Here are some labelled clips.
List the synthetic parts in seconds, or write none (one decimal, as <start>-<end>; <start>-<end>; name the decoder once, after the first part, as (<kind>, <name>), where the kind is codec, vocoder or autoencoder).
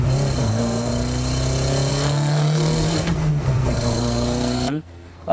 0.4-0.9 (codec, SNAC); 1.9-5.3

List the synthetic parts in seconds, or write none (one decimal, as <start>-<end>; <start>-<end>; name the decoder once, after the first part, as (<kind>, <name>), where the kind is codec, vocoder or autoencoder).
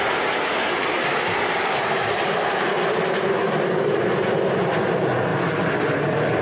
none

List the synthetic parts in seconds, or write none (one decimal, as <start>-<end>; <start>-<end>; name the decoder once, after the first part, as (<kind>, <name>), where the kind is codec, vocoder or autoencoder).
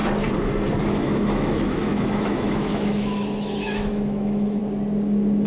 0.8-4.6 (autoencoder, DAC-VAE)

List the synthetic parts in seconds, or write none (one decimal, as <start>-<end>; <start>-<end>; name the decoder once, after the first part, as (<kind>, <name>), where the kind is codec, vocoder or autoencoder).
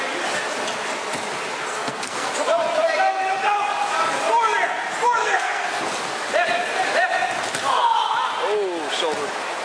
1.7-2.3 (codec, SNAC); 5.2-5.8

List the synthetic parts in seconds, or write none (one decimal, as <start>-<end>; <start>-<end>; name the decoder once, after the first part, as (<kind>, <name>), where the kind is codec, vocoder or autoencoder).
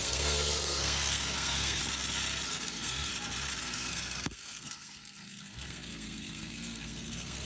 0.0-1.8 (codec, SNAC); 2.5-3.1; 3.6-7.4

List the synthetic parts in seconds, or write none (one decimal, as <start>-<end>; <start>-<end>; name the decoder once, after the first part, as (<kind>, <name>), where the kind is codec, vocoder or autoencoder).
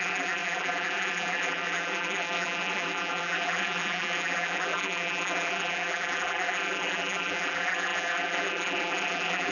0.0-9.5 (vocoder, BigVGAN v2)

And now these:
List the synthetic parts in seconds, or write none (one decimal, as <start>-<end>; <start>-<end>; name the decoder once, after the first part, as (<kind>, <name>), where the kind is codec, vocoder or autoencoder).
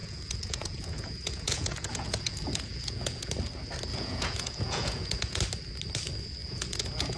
0.0-3.3 (vocoder, Vocos); 3.9-5.4; 6.4-7.2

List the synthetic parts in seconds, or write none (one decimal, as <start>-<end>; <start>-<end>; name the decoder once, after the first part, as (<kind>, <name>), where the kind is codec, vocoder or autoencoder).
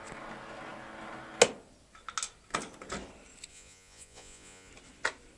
3.5-4.7 (vocoder, Vocos)